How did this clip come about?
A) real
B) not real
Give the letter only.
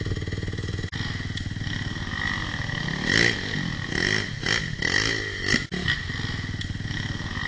A